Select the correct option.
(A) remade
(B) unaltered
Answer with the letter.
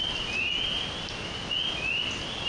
B